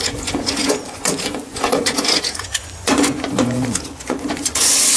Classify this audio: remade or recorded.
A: remade